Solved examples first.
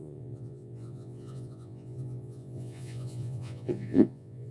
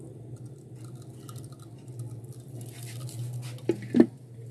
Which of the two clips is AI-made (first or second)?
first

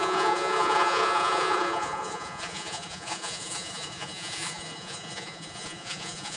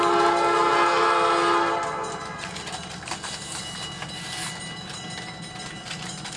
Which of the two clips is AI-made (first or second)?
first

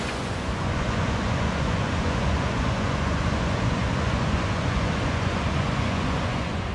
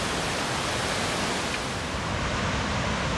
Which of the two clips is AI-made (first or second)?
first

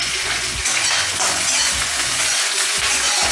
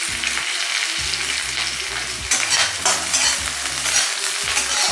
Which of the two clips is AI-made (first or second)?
first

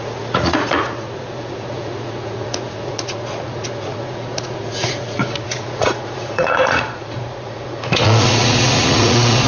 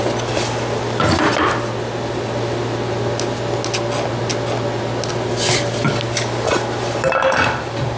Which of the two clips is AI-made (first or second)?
first